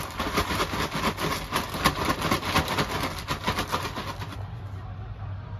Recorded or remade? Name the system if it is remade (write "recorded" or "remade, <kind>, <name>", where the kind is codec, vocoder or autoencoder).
recorded